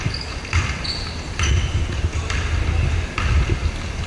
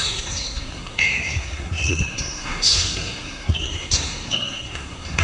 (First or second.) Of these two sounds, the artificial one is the second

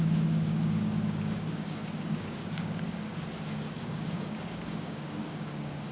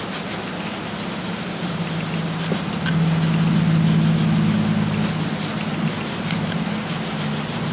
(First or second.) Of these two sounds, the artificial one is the first